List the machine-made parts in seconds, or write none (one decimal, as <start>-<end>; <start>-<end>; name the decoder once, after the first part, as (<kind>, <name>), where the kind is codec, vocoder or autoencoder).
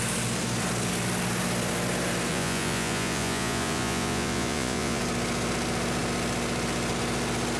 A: 2.3-5.0 (vocoder, Vocos)